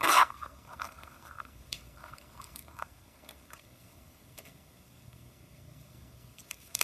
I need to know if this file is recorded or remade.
remade